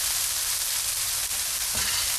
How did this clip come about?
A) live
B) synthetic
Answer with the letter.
A